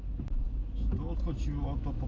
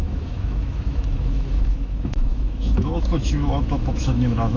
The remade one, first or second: second